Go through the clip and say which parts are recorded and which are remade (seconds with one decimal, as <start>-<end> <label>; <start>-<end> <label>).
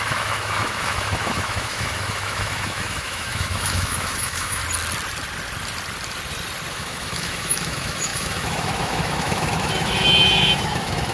0.0-4.6 remade; 4.6-6.7 recorded; 6.7-11.1 remade